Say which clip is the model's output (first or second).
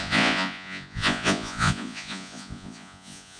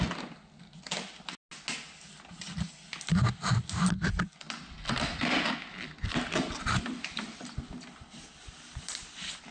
first